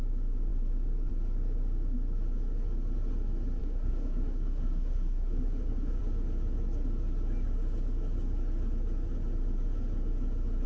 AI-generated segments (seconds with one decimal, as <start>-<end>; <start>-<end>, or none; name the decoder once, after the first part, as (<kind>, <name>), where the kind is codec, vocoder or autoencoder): 3.6-6.0 (codec, SNAC)